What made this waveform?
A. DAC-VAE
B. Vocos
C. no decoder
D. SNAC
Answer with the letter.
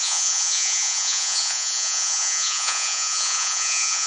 B